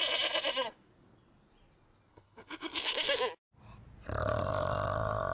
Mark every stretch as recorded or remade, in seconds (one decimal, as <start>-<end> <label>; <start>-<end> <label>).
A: 0.0-2.1 recorded; 2.1-3.2 remade; 3.2-5.3 recorded